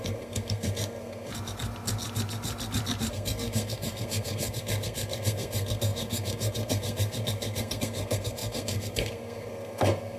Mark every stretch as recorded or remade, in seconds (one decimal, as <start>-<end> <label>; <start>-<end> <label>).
0.0-1.3 remade; 1.3-3.1 recorded; 3.1-10.2 remade